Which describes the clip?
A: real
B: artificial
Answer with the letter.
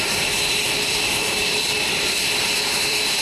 B